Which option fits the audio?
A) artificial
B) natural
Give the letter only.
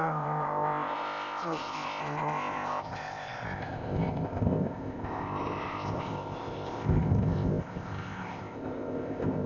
A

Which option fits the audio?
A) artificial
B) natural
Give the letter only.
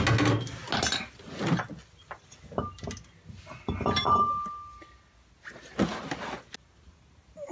B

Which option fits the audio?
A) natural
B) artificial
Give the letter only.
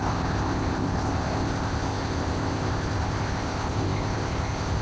B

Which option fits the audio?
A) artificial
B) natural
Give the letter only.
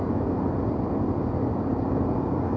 B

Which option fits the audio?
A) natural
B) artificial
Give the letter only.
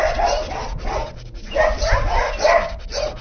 A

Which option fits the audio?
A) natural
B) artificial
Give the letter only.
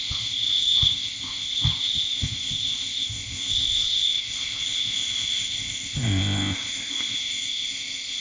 B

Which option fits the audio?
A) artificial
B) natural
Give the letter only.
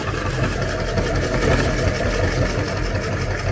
B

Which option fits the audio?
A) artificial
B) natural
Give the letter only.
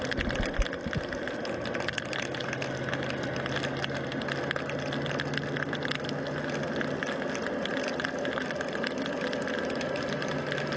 B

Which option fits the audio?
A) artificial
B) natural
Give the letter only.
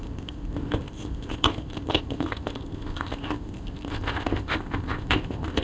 A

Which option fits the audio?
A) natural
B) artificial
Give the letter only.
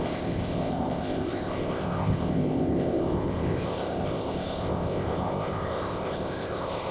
B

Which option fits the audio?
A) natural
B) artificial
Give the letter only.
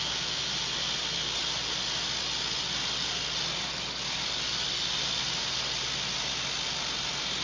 A